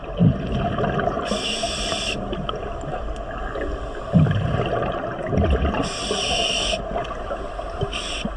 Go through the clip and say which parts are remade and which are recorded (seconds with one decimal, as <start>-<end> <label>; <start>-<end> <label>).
0.0-8.4 recorded